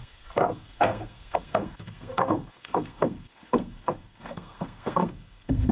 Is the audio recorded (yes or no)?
no